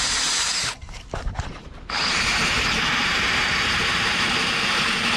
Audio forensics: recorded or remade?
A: remade